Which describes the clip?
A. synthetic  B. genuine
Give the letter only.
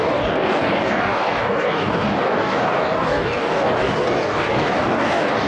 A